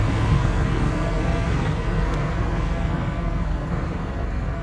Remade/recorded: remade